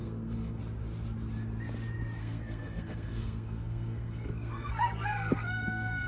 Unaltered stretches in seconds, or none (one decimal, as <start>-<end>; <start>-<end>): 0.6-2.2